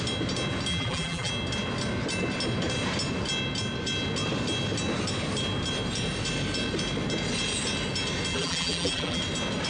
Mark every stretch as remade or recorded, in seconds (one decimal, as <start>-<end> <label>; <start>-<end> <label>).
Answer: 0.0-0.7 recorded; 0.7-1.3 remade; 1.3-8.3 recorded; 8.3-9.2 remade; 9.2-9.7 recorded